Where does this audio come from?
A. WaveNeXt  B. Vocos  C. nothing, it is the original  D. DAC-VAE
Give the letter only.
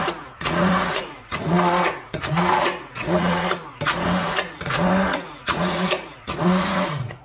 B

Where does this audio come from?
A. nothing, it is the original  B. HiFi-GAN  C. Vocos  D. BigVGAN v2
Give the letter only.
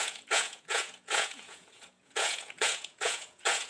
C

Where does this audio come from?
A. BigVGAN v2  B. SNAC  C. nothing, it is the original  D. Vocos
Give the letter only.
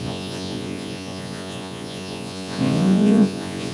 D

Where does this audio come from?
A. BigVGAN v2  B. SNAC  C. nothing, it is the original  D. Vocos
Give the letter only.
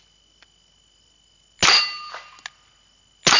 C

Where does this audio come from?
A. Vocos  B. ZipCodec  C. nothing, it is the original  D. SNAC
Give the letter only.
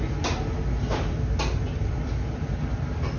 C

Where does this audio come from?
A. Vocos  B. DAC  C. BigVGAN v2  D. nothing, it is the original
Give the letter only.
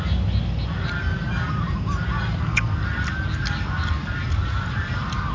D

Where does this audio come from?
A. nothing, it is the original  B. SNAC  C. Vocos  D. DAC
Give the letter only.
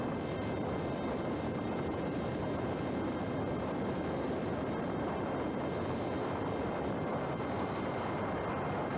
A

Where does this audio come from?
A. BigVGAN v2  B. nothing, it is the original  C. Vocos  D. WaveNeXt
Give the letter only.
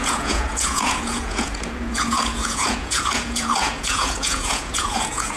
C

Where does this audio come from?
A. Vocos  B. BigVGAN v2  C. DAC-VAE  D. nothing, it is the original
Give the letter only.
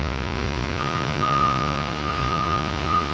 A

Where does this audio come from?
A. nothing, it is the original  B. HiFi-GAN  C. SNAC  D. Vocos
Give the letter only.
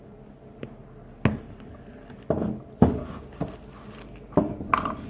A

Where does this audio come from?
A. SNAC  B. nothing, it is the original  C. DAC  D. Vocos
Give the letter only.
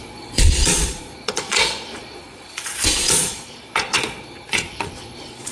D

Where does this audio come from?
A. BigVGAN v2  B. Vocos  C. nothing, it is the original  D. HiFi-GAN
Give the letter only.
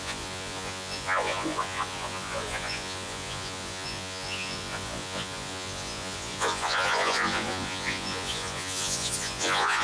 B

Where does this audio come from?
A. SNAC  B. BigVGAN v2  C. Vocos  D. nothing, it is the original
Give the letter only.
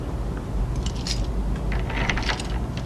D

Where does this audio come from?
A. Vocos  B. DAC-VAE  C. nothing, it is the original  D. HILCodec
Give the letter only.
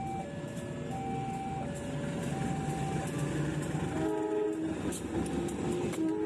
C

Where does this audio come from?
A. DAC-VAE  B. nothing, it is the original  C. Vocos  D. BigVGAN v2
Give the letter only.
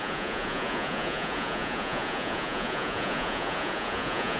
C